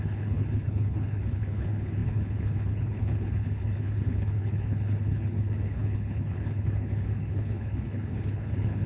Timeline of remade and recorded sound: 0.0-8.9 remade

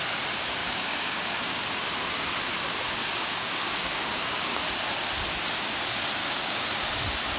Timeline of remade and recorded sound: 0.0-0.6 recorded; 0.6-1.9 remade; 1.9-3.0 recorded; 3.0-4.6 remade; 4.6-6.2 recorded; 6.2-6.8 remade; 6.8-7.4 recorded